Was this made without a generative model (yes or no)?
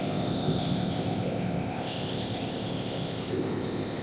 no